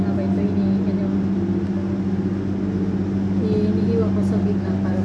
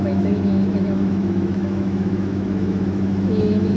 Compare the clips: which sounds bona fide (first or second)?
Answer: first